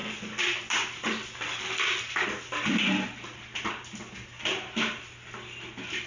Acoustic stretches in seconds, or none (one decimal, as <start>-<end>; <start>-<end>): 0.0-6.1